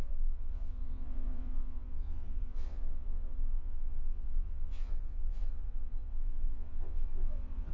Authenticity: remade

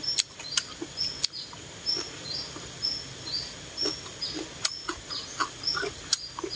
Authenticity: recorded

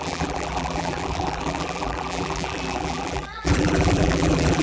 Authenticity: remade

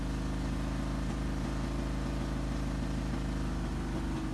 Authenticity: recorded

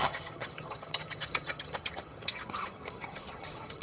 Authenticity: remade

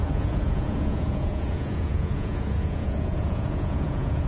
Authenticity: remade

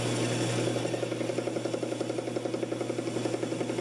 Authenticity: recorded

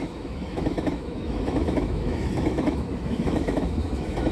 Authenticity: remade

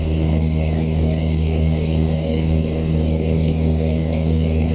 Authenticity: remade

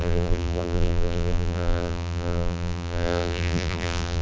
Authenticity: remade